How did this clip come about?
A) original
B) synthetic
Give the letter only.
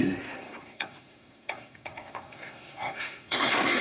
B